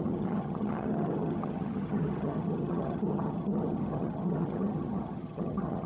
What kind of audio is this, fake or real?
fake